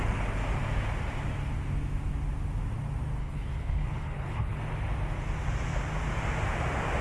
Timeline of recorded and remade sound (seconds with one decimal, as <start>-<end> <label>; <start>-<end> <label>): 0.0-3.2 recorded; 3.2-4.6 remade; 4.6-7.0 recorded